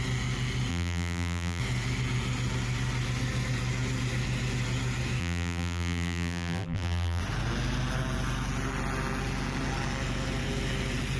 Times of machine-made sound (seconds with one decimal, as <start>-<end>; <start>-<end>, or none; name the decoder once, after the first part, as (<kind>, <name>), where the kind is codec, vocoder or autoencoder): 0.7-1.6 (vocoder, BigVGAN v2); 5.2-7.2